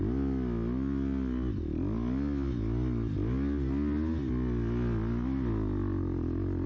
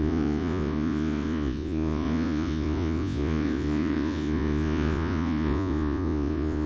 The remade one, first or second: second